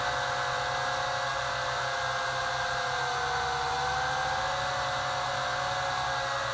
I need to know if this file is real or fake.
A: real